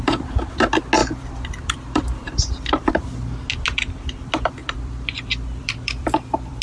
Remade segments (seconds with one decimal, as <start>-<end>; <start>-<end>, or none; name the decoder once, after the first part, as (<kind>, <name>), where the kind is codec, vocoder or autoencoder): 1.0-2.9 (vocoder, BigVGAN v2); 4.6-6.6